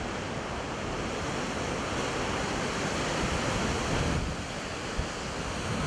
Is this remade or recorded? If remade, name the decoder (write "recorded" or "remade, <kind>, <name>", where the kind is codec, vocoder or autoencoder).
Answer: recorded